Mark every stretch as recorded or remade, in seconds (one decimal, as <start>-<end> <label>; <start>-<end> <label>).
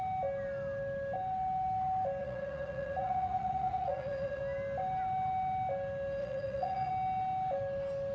0.0-2.2 recorded; 2.2-4.4 remade; 4.4-6.2 recorded; 6.2-6.9 remade; 6.9-8.1 recorded